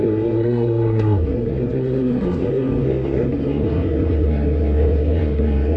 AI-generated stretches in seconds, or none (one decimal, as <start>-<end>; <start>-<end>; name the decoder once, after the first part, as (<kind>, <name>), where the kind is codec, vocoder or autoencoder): 0.0-5.8 (codec, SNAC)